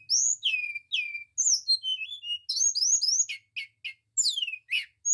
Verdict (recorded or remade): recorded